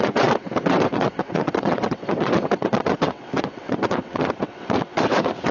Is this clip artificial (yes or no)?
yes